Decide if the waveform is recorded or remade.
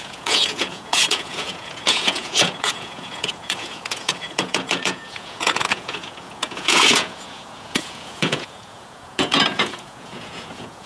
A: remade